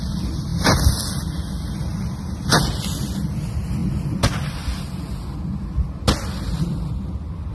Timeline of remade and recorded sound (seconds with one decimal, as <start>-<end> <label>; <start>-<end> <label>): 0.0-7.5 recorded